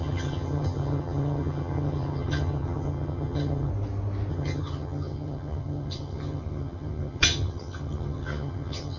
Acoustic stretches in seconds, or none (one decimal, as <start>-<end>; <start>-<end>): 3.7-4.3